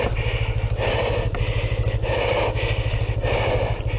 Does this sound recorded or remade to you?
recorded